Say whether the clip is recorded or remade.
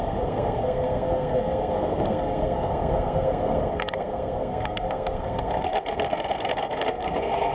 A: remade